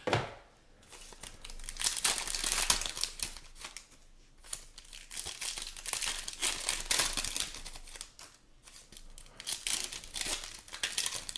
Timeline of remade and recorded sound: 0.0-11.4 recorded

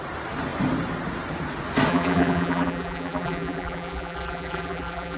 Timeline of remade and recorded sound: 0.0-1.9 recorded; 1.9-5.2 remade